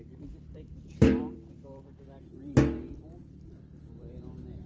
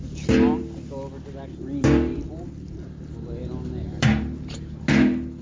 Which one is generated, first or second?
first